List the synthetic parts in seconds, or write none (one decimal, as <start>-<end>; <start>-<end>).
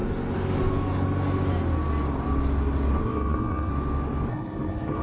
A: 3.0-3.7; 4.3-5.0